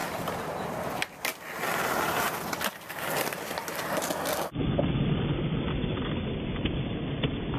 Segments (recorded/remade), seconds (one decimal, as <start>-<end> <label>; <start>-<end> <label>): 0.0-7.6 recorded